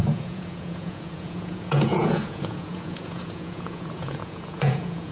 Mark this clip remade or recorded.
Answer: remade